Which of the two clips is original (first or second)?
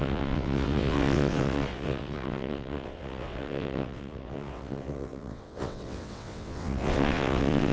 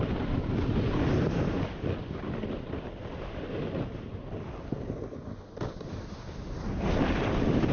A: second